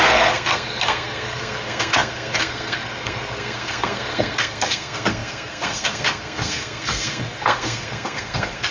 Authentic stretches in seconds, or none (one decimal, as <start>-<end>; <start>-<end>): none